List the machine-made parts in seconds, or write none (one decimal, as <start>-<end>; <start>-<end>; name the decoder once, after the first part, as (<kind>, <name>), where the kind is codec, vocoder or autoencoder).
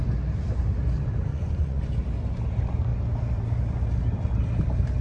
1.3-1.8 (vocoder, Vocos)